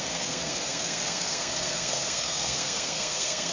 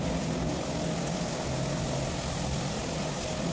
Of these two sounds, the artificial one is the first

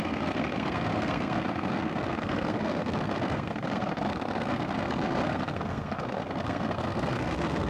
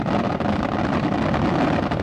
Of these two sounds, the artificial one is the first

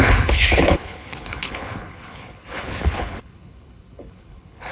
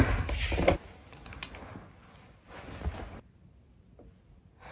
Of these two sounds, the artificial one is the first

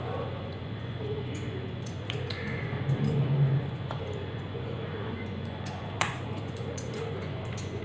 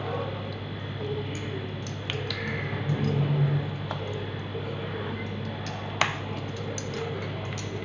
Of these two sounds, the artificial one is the first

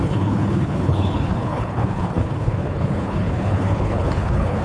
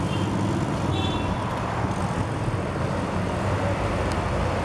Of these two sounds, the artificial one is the first